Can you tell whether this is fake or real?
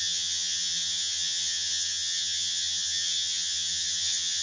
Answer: fake